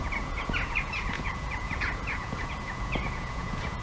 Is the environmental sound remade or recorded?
remade